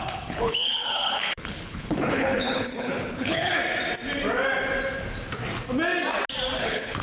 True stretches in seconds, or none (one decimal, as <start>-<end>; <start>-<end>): 3.6-6.6